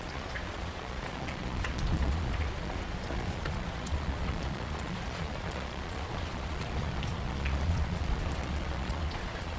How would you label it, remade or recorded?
remade